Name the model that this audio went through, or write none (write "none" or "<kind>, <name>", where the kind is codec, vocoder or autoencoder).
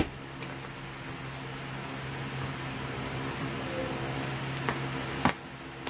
none